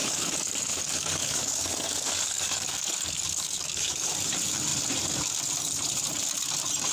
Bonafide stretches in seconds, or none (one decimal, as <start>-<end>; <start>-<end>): 4.1-6.9